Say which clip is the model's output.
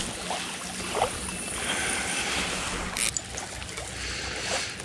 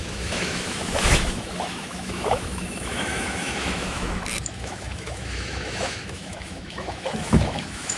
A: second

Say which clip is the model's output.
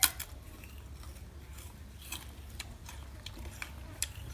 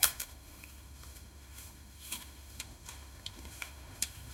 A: second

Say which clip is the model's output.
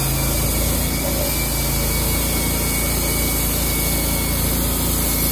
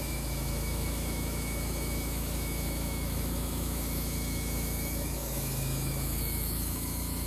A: second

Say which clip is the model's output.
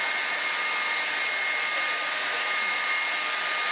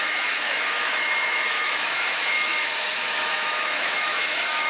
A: second